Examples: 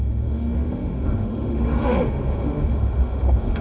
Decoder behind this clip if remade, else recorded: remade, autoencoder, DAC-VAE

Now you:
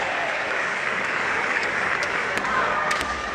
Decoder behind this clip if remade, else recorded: remade, codec, DAC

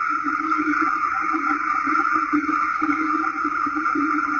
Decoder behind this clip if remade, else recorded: recorded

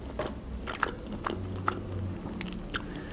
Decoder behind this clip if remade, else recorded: recorded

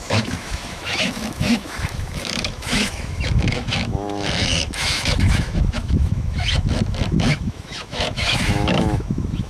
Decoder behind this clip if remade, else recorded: remade, autoencoder, DAC-VAE